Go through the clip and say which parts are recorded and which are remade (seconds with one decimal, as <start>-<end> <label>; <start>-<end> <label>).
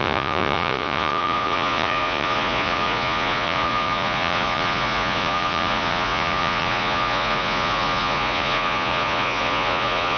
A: 0.0-10.2 remade